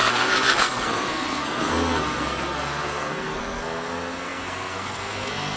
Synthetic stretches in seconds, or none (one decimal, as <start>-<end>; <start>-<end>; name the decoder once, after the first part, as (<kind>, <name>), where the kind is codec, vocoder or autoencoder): 0.0-5.6 (codec, SNAC)